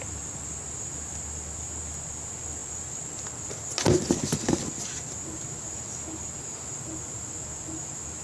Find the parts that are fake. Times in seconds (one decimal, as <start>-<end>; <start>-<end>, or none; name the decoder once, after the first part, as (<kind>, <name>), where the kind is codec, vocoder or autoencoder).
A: none